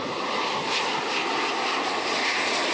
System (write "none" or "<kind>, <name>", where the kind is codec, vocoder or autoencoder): none